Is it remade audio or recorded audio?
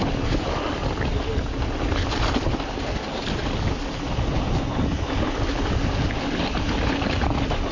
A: recorded